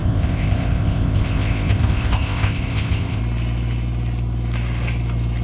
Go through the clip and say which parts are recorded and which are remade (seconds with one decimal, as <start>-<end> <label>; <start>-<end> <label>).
0.0-3.2 remade; 3.2-5.4 recorded